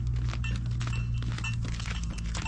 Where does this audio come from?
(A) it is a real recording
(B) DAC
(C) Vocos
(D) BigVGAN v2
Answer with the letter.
A